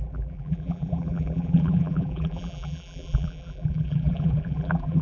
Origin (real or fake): fake